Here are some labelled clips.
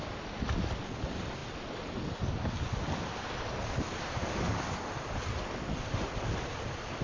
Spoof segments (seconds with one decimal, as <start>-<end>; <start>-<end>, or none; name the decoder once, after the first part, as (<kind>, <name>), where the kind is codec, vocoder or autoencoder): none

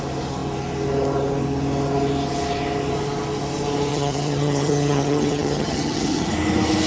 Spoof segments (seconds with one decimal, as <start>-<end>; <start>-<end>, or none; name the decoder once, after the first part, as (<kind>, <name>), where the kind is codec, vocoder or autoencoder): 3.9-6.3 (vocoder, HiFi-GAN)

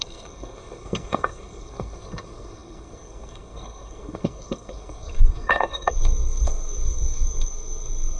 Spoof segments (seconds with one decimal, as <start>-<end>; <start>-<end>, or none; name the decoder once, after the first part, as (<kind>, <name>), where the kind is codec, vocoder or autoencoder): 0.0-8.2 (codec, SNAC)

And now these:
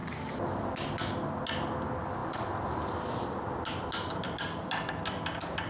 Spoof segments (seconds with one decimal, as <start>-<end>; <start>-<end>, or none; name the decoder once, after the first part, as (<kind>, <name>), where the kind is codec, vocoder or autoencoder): none